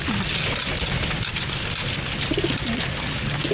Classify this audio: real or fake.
real